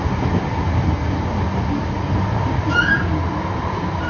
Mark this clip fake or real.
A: real